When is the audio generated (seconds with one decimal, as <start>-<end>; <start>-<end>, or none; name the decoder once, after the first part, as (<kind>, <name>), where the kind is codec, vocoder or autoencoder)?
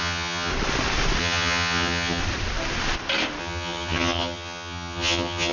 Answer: 0.0-0.5 (vocoder, HiFi-GAN); 1.2-2.2; 3.4-5.5